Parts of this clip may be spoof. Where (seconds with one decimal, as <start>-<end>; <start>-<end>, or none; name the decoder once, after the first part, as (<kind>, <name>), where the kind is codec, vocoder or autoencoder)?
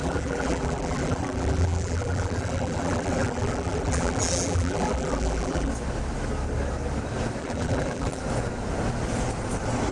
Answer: 0.0-5.7 (vocoder, BigVGAN v2); 7.4-8.2